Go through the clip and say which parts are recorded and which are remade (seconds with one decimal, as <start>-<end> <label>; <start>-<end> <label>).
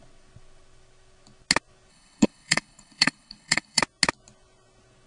0.0-1.9 recorded; 1.9-3.8 remade; 3.8-5.1 recorded